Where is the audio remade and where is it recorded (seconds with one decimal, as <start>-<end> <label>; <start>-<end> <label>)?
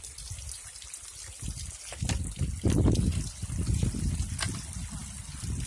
0.0-5.7 recorded